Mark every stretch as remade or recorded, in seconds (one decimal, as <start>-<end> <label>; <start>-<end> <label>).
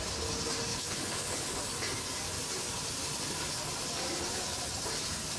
0.0-0.7 recorded; 0.7-1.6 remade; 1.6-5.4 recorded